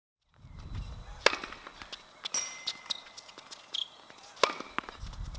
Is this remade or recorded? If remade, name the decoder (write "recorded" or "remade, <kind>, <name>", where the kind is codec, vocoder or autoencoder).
recorded